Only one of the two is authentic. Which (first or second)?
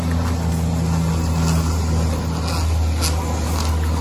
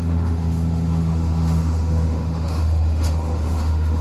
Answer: first